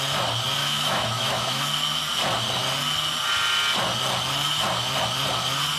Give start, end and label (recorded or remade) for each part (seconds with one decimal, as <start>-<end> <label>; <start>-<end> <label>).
0.0-0.6 recorded; 0.6-1.6 remade; 1.6-5.8 recorded